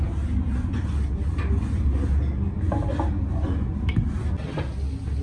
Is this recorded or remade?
recorded